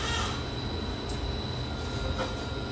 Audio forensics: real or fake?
real